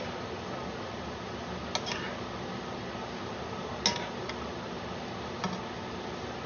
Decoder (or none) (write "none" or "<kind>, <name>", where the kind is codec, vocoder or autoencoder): none